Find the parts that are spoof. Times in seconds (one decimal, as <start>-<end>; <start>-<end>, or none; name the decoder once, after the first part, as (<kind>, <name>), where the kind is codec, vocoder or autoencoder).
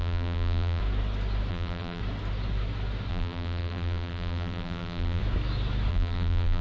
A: 0.0-0.8 (vocoder, BigVGAN v2); 1.5-2.0; 3.1-5.2; 5.9-6.6